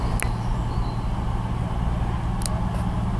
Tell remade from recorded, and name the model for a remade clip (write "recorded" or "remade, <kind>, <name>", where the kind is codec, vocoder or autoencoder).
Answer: recorded